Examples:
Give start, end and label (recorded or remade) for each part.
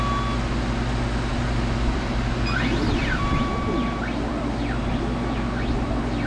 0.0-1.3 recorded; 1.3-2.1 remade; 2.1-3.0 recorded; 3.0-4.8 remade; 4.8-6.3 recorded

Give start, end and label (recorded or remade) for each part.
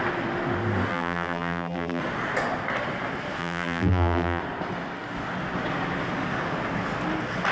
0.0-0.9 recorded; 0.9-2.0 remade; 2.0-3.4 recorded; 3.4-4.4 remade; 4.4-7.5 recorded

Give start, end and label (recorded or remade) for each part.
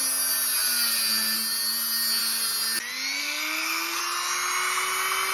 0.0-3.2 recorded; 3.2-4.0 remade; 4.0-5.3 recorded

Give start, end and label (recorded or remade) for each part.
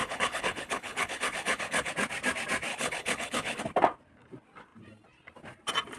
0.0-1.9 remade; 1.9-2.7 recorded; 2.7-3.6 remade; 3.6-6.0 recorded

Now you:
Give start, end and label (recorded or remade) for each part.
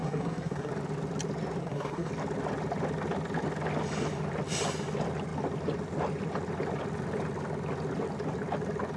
0.0-0.7 remade; 0.7-1.6 recorded; 1.6-2.1 remade; 2.1-9.0 recorded